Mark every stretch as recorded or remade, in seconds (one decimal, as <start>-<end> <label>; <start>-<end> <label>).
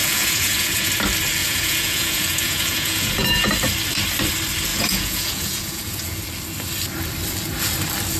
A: 0.0-0.9 remade; 0.9-1.4 recorded; 1.4-3.5 remade; 3.5-4.7 recorded; 4.7-6.2 remade; 6.2-8.2 recorded